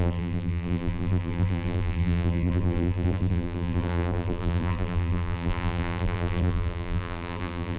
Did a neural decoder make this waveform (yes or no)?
yes